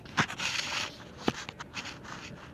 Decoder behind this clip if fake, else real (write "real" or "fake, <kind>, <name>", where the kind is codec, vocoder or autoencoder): real